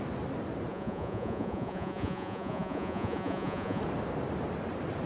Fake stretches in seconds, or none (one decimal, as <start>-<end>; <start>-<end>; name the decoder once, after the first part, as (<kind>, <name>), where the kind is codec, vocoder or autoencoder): 0.7-3.8 (vocoder, Vocos)